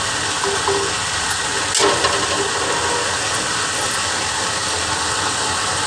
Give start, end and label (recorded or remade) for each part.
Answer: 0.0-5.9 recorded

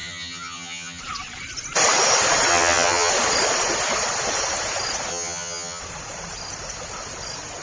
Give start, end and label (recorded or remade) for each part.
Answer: 0.0-1.0 remade; 1.0-2.5 recorded; 2.5-3.1 remade; 3.1-5.1 recorded; 5.1-5.8 remade; 5.8-7.6 recorded